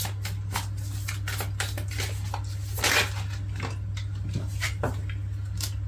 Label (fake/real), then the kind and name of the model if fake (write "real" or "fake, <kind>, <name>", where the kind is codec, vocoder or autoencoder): real